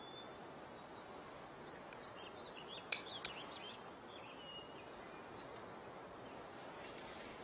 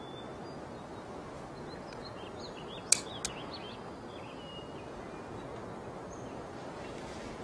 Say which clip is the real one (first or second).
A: second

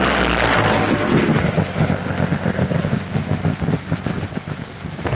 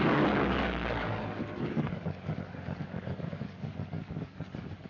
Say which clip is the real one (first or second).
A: first